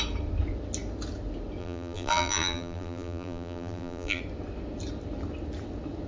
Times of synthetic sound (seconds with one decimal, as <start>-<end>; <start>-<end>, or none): 1.6-4.2